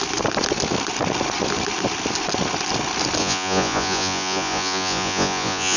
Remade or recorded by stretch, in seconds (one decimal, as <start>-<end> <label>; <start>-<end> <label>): 0.0-3.2 recorded; 3.2-5.8 remade